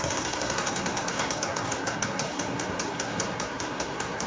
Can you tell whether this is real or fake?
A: fake